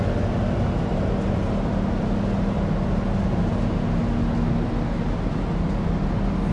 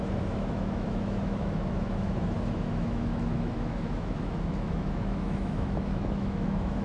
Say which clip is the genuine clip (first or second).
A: first